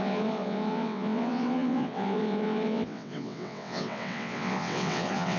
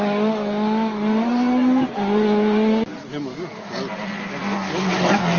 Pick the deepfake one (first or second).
first